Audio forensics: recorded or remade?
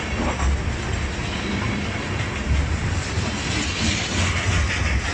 recorded